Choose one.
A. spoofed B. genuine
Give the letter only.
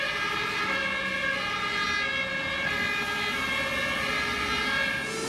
B